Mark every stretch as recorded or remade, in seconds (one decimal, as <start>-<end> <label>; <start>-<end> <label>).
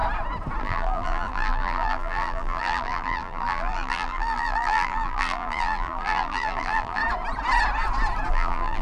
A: 0.0-0.6 recorded; 0.6-7.0 remade; 7.0-8.3 recorded; 8.3-8.8 remade